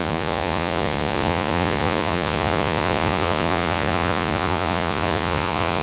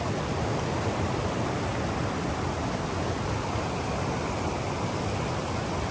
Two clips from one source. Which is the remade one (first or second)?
first